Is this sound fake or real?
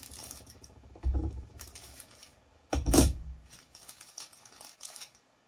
fake